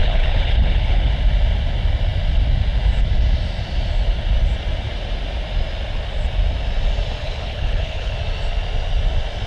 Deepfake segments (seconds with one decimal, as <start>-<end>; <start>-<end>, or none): 0.0-1.1; 7.2-8.2